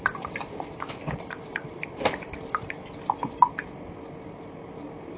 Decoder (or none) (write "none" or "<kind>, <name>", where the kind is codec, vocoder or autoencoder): none